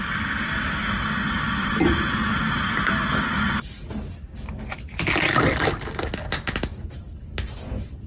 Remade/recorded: recorded